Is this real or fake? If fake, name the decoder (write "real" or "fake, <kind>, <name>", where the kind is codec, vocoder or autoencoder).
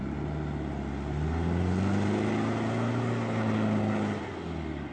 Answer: real